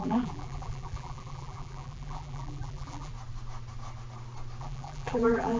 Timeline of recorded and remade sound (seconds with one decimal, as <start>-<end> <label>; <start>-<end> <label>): 0.0-3.1 remade; 3.1-4.6 recorded; 4.6-5.6 remade